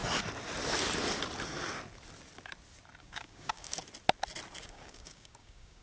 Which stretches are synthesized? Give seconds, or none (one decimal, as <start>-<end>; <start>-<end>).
3.0-3.8; 4.6-5.8